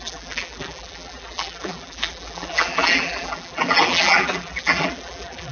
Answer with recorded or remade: remade